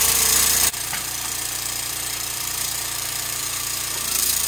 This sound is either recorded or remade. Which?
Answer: remade